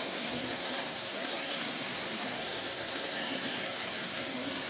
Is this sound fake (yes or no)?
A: yes